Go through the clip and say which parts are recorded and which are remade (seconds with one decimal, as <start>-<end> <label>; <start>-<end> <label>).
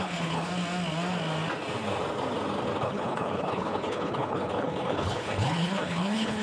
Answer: 0.0-0.5 remade; 0.5-2.8 recorded; 2.8-6.4 remade